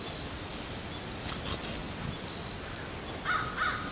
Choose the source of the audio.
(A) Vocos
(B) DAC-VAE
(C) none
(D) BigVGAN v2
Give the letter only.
C